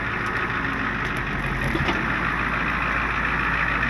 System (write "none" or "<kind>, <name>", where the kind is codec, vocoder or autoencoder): none